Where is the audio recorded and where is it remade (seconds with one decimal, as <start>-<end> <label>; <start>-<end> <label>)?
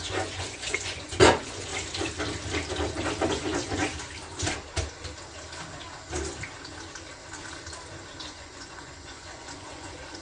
0.0-1.7 remade; 1.7-3.3 recorded; 3.3-3.9 remade; 3.9-8.2 recorded; 8.2-10.2 remade